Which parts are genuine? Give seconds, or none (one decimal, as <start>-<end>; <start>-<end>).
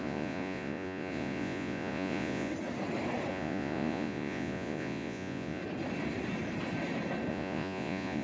2.5-3.3; 5.6-7.3